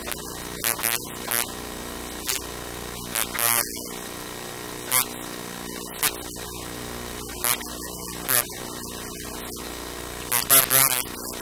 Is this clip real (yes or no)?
yes